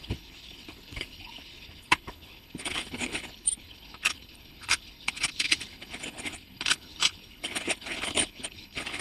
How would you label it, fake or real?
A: fake